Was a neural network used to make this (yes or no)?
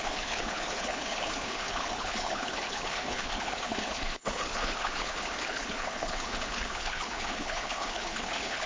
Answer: yes